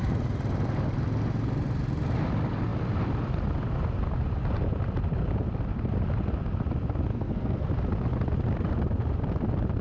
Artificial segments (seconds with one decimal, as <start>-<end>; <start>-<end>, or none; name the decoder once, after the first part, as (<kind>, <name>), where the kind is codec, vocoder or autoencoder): 7.1-7.7 (codec, SNAC)